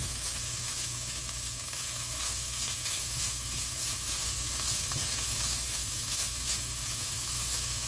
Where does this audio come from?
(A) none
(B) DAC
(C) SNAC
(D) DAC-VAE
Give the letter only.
D